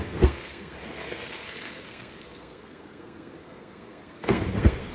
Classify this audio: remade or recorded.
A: remade